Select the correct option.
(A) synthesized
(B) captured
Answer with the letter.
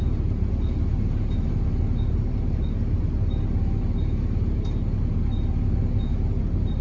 B